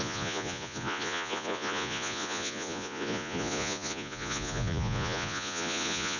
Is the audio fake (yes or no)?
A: yes